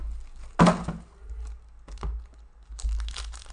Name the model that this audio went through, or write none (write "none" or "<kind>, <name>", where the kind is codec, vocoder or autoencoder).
none